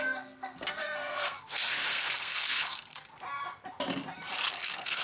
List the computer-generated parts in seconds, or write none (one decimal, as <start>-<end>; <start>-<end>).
0.0-3.1; 4.5-5.0